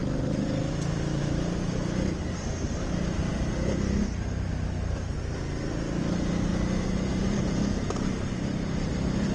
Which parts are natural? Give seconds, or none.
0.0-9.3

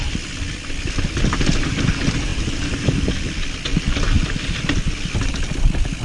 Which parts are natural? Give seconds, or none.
0.0-6.0

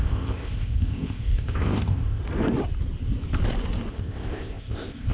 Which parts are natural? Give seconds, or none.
2.2-3.9

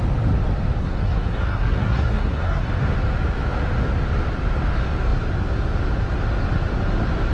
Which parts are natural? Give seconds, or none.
0.0-0.8; 2.7-7.3

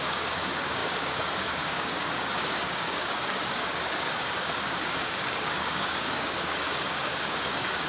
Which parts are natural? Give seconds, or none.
none

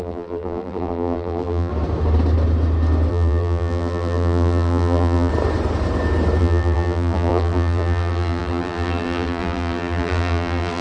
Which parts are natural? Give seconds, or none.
1.7-3.1; 5.3-6.4

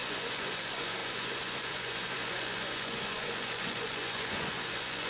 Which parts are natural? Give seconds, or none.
none